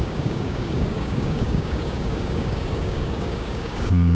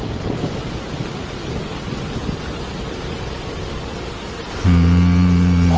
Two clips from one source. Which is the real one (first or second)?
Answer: second